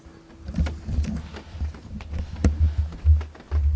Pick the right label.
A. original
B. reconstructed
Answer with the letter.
A